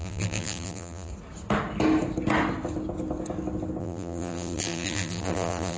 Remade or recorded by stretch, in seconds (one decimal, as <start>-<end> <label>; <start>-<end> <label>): 0.0-1.1 remade; 1.1-3.8 recorded; 3.8-5.8 remade